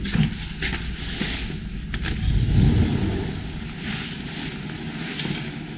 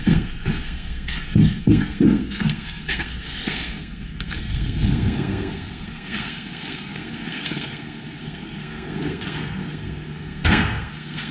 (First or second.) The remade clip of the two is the second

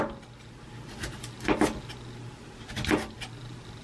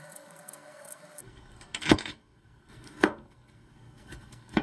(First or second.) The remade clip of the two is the second